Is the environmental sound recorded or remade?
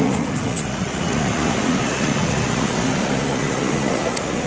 remade